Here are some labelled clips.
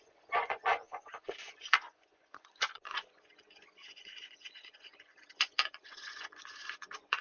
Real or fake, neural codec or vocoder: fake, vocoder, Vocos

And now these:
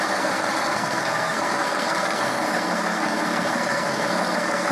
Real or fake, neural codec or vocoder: fake, codec, SNAC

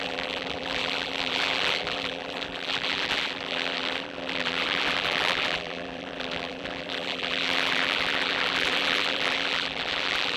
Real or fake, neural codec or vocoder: fake, vocoder, BigVGAN v2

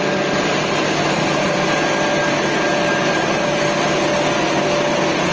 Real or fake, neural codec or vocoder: real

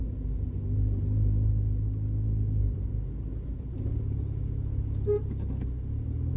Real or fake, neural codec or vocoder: real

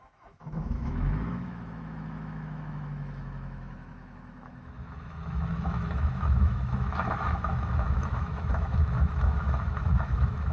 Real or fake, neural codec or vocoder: fake, autoencoder, DAC-VAE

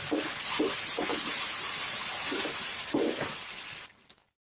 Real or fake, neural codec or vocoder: fake, vocoder, BigVGAN v2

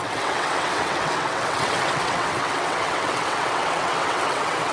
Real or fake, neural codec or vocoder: fake, vocoder, WaveNeXt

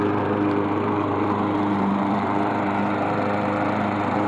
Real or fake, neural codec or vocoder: fake, vocoder, BigVGAN v2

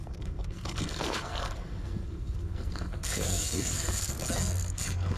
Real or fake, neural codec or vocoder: fake, codec, SNAC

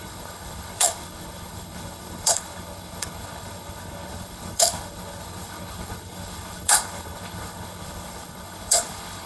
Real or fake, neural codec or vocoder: fake, codec, HILCodec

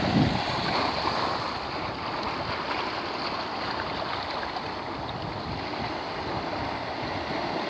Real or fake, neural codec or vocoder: real